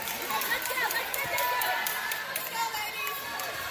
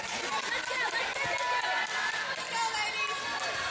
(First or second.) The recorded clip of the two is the second